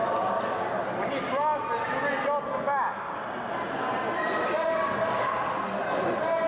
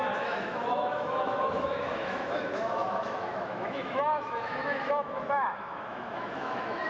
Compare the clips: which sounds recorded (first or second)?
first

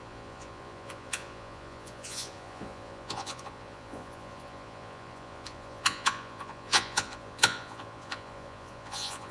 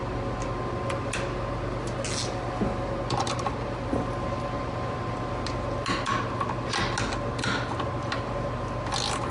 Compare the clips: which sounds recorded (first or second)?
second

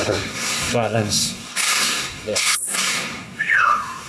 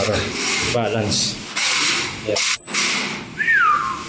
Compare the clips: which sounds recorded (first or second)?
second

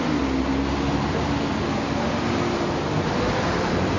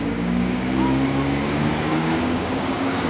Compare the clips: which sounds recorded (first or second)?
first